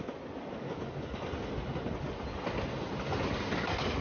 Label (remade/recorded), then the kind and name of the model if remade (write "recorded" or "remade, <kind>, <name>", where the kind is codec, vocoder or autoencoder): recorded